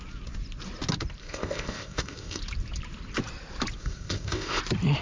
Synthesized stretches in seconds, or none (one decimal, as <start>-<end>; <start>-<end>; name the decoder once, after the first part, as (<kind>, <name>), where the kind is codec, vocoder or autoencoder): 1.2-2.4 (codec, ZipCodec); 3.8-4.6